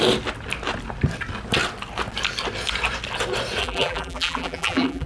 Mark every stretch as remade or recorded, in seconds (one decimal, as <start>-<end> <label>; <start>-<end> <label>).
0.0-3.6 recorded; 3.6-5.1 remade